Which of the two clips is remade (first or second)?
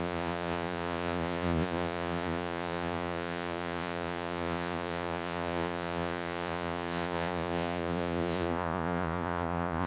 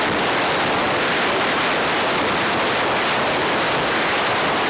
first